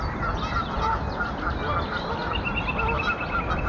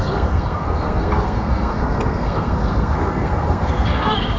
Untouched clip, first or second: first